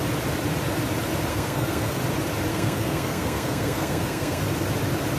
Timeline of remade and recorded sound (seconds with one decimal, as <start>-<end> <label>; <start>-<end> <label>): 0.0-1.3 recorded; 1.3-2.0 remade; 2.0-2.5 recorded; 2.5-4.4 remade; 4.4-5.2 recorded

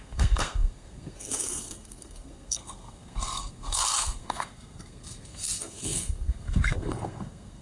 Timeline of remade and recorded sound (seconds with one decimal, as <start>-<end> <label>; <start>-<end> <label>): 0.0-7.6 remade

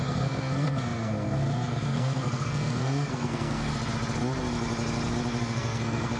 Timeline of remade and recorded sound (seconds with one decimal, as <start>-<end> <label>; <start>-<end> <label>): 0.0-3.7 remade; 3.7-5.4 recorded; 5.4-6.2 remade

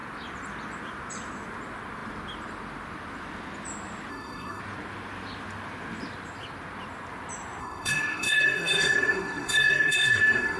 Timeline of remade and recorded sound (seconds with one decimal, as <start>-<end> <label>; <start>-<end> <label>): 0.0-4.1 recorded; 4.1-4.6 remade; 4.6-7.6 recorded; 7.6-10.6 remade

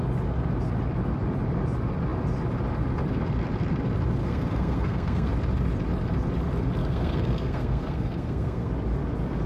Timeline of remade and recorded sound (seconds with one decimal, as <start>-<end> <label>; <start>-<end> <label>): 0.0-4.2 recorded; 4.2-5.3 remade; 5.3-6.8 recorded; 6.8-8.7 remade; 8.7-9.5 recorded

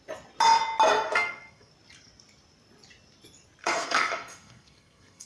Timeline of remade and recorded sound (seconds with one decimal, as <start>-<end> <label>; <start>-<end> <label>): 0.0-1.1 recorded; 1.1-1.7 remade; 1.7-3.6 recorded; 3.6-5.3 remade